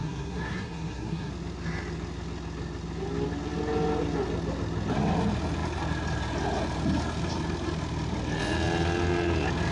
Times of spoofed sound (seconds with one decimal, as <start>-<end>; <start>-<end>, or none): 0.0-1.3